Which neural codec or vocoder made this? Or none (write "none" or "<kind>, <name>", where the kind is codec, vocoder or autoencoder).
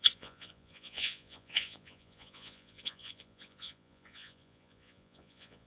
vocoder, Vocos